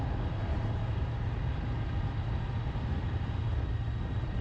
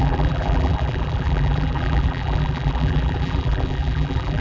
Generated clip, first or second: second